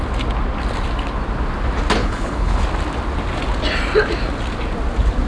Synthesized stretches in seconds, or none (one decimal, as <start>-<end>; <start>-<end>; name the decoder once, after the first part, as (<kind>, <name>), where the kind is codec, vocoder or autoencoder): 2.0-2.6 (codec, HILCodec)